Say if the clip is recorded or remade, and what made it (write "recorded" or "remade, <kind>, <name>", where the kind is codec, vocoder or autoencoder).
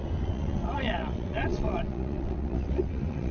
remade, vocoder, WaveNeXt